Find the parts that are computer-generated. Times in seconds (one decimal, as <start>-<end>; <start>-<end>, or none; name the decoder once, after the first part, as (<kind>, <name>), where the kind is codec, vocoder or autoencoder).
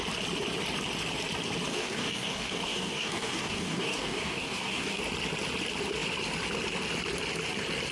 1.7-5.0 (codec, DAC)